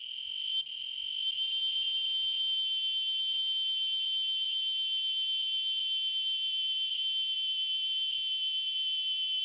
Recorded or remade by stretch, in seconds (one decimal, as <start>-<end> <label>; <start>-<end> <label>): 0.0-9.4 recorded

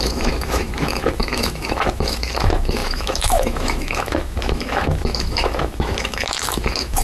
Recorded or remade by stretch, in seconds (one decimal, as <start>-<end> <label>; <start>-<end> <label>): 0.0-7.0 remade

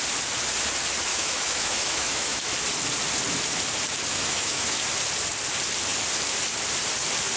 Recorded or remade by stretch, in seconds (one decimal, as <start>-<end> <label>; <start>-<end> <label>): 0.0-1.1 recorded; 1.1-2.5 remade; 2.5-4.1 recorded; 4.1-4.8 remade; 4.8-7.4 recorded